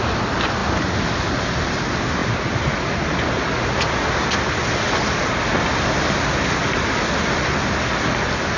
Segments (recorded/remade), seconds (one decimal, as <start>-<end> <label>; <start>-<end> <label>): 0.0-8.6 recorded